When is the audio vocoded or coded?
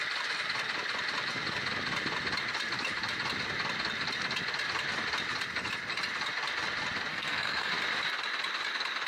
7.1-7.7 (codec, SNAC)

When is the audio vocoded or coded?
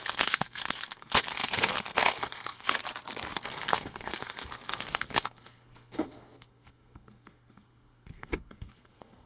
0.0-2.8 (codec, SNAC); 3.4-9.3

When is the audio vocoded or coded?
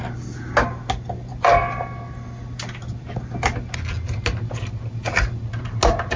none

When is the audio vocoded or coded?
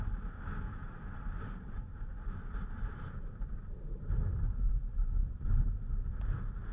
0.8-4.8 (vocoder, BigVGAN v2)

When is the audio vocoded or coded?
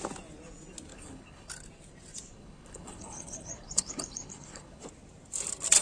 0.9-1.5 (codec, HILCodec); 2.3-4.8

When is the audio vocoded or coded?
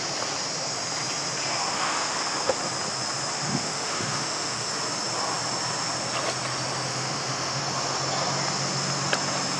1.6-2.6 (autoencoder, DAC-VAE); 3.3-4.7; 6.9-7.6